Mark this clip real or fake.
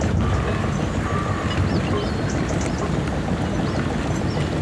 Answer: real